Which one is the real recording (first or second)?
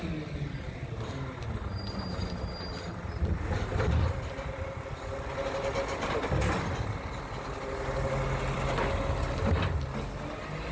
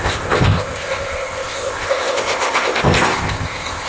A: first